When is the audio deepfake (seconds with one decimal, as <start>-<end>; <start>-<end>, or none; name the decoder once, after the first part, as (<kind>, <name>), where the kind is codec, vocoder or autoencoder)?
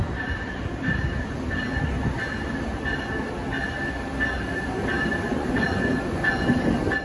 5.3-6.4 (vocoder, Vocos)